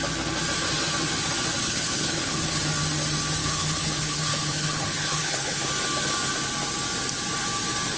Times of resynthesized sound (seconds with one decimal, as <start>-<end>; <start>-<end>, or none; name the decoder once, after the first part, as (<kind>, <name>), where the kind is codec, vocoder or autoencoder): 1.6-2.6 (codec, HILCodec); 3.4-5.7